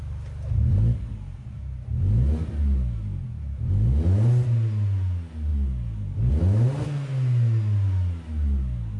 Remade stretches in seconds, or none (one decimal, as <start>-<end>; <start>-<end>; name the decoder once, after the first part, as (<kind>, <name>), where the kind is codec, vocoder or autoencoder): none